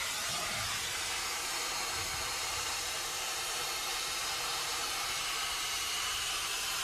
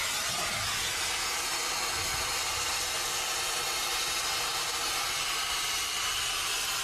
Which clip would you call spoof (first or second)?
first